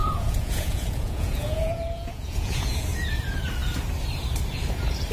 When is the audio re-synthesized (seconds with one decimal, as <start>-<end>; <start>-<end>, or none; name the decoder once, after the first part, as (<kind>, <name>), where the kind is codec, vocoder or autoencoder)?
0.0-3.1 (vocoder, Vocos)